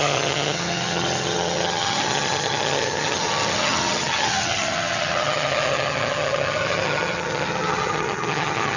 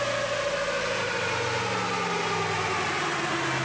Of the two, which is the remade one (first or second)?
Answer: first